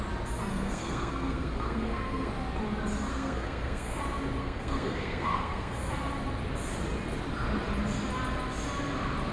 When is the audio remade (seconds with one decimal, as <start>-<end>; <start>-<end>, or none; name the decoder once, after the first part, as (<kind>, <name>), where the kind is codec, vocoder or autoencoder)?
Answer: 0.5-2.3 (codec, SNAC); 3.1-4.0; 4.4-5.8